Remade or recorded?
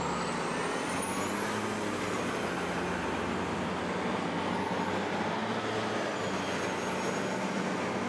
recorded